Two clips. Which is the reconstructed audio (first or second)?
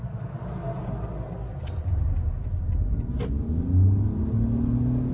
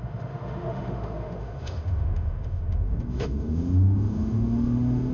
second